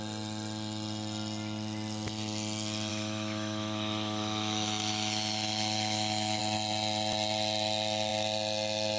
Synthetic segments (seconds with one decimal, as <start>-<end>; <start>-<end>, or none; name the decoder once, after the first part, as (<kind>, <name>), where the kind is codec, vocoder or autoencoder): 2.9-6.4 (autoencoder, DAC-VAE)